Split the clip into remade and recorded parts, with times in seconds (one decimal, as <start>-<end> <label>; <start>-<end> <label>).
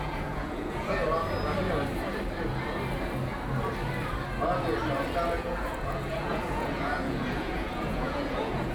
0.0-1.0 remade; 1.0-5.3 recorded; 5.3-8.7 remade